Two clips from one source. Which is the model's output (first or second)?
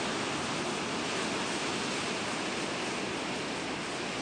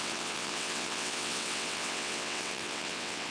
second